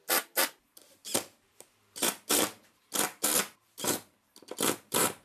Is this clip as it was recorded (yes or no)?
no